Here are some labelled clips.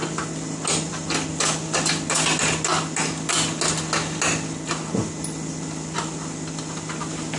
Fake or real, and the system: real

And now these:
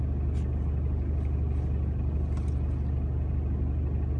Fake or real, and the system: real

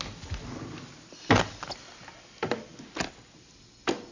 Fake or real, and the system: real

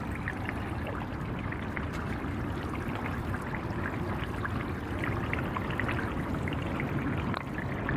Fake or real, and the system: real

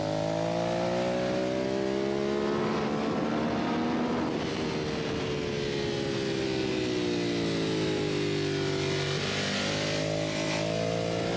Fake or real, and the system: real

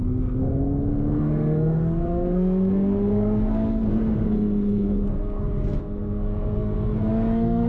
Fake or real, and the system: fake, codec, SNAC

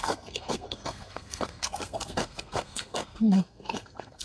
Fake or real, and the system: fake, codec, SNAC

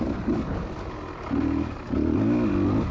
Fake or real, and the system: real